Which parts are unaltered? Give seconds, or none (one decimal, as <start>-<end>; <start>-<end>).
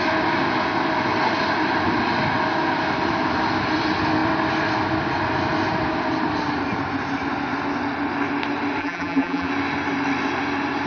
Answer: 0.0-8.8; 9.5-10.9